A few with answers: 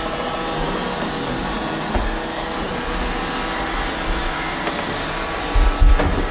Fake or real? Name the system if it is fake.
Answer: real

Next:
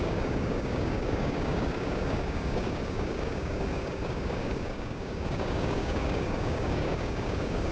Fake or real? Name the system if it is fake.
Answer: fake, codec, DAC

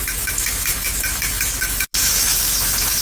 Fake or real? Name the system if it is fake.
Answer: fake, autoencoder, DAC-VAE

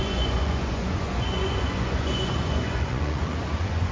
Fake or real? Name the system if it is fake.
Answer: fake, vocoder, Vocos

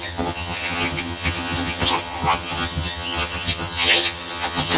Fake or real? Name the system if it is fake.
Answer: fake, vocoder, HiFi-GAN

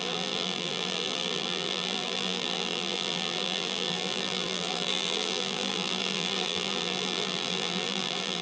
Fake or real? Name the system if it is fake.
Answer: fake, vocoder, BigVGAN v2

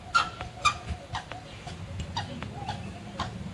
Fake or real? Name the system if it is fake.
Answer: real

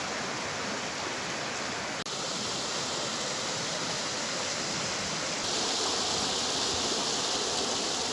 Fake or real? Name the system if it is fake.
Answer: real